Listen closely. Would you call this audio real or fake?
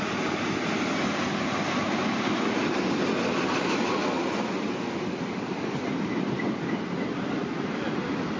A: real